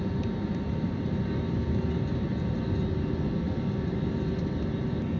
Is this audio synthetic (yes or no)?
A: no